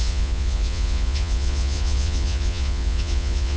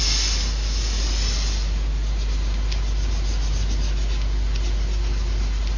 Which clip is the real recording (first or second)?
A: second